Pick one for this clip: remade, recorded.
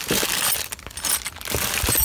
recorded